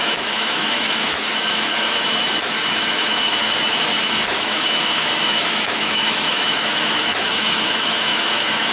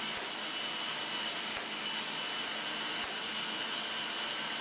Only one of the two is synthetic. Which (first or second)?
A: first